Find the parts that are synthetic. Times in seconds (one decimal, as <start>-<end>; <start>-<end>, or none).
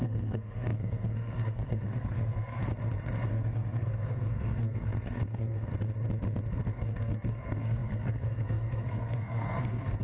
0.0-2.6; 3.3-5.7; 6.7-10.0